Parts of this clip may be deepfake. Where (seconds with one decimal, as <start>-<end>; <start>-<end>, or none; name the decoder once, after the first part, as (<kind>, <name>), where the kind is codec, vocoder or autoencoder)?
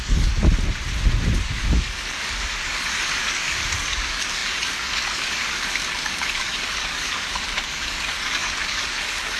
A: 0.0-0.4 (codec, DAC); 1.4-9.4